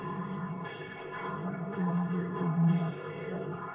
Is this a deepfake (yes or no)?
yes